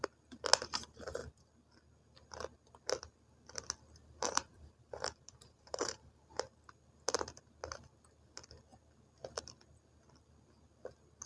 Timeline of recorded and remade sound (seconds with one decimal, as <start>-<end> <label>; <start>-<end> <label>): 0.0-4.0 recorded; 4.0-6.2 remade; 6.2-11.3 recorded